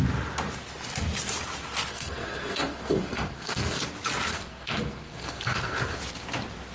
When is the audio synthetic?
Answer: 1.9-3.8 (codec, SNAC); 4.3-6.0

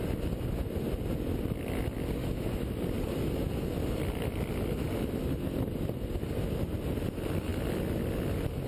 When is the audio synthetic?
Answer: 2.2-2.8 (autoencoder, DAC-VAE)

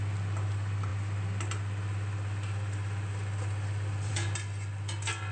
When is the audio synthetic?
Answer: none

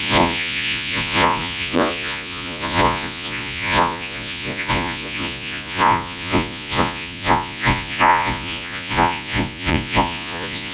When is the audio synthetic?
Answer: 0.0-10.7 (vocoder, Vocos)

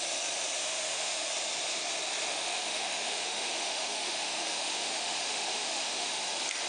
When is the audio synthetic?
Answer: 0.6-1.3 (autoencoder, DAC-VAE); 2.3-6.2

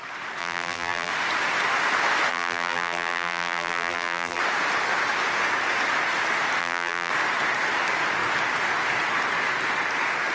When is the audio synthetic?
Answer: 0.4-1.1 (vocoder, BigVGAN v2); 2.3-4.4; 6.6-7.1

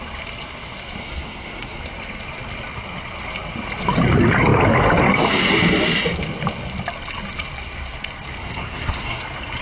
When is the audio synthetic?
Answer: 1.0-1.8 (codec, SNAC); 8.4-9.2

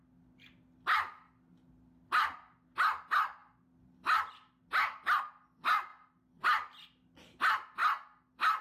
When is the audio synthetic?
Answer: none